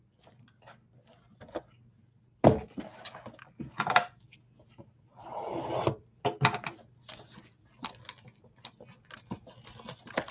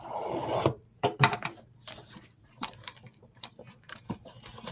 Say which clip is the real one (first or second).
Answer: first